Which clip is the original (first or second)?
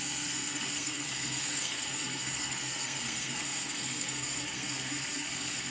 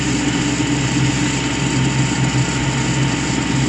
second